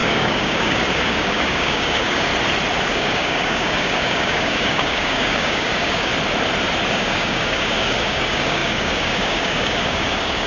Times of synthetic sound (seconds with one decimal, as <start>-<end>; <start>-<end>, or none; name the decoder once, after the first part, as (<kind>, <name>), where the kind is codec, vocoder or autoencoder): 0.0-2.3 (codec, DAC); 2.8-6.1; 6.9-10.5